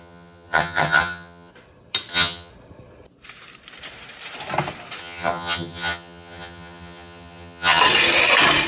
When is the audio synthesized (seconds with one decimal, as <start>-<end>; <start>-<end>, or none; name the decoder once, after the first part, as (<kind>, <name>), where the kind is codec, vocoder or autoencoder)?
0.0-1.5 (vocoder, HiFi-GAN); 2.1-2.5; 5.0-7.8